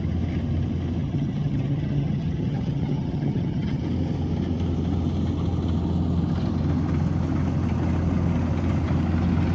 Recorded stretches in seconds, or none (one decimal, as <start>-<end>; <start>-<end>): 0.0-1.0; 3.8-9.5